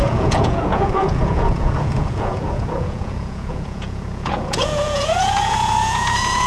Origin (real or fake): fake